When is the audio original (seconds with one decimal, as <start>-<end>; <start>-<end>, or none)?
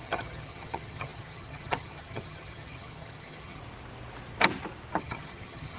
3.6-5.0